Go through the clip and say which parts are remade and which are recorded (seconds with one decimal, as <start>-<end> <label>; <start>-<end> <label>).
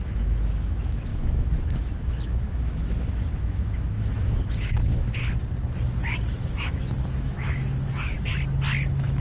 0.0-5.2 remade; 5.2-6.1 recorded; 6.1-8.3 remade; 8.3-9.2 recorded